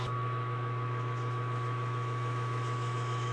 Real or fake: fake